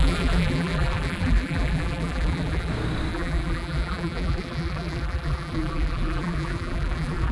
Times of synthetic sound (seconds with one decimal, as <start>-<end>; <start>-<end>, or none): 0.0-2.7; 3.1-7.3